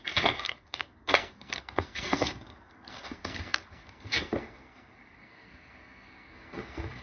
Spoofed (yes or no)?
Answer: yes